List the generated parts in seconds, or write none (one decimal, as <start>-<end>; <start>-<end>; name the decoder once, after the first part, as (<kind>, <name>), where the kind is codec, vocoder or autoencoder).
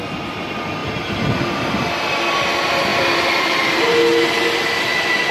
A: none